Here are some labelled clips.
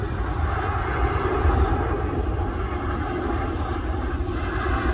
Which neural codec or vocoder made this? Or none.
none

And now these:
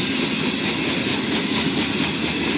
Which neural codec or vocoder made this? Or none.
none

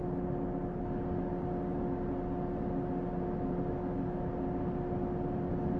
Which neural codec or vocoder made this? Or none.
none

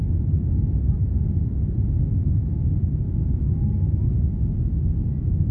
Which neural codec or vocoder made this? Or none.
none